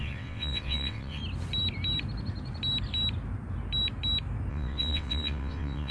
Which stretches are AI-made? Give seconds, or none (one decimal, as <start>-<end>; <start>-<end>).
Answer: 0.0-1.2; 4.5-5.9